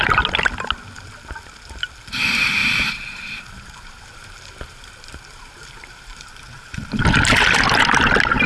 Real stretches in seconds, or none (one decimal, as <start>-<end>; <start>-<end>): 0.0-2.6; 7.0-8.5